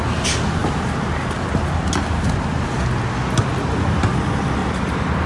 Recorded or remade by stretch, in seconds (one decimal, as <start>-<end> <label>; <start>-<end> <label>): 0.0-0.6 recorded; 0.6-1.1 remade; 1.1-4.6 recorded; 4.6-5.3 remade